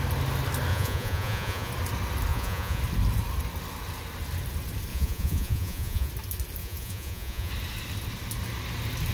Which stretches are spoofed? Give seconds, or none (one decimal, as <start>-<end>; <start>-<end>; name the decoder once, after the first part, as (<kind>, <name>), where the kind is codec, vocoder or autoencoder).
0.7-1.7 (vocoder, Vocos); 2.3-2.8; 4.9-6.1; 6.6-7.5